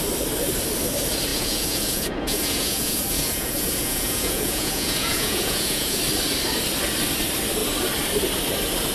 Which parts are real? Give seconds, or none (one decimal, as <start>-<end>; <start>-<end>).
0.0-1.3; 6.0-8.9